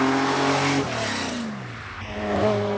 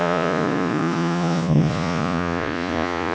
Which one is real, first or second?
first